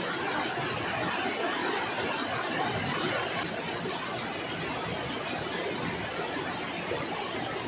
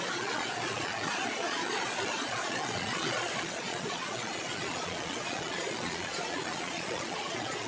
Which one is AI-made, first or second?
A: second